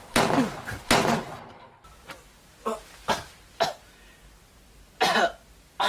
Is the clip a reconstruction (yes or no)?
no